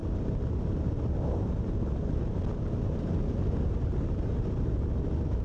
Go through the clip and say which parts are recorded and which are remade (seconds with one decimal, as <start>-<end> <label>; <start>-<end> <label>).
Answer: 0.0-3.9 recorded; 3.9-4.7 remade; 4.7-5.4 recorded

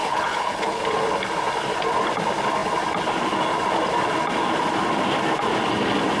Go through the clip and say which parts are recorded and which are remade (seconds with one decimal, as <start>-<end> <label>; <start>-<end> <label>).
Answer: 0.0-0.8 remade; 0.8-6.2 recorded

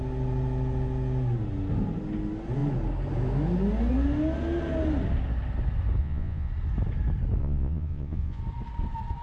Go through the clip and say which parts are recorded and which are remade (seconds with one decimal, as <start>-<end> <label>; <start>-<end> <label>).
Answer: 0.0-6.0 recorded; 6.0-6.5 remade; 6.5-7.4 recorded; 7.4-8.4 remade; 8.4-9.2 recorded

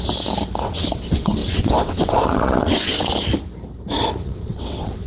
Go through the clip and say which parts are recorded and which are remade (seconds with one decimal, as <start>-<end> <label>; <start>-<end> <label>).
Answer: 0.0-0.6 recorded; 0.6-3.1 remade; 3.1-4.2 recorded; 4.2-5.1 remade